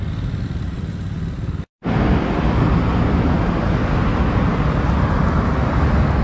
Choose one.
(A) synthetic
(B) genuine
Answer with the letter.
B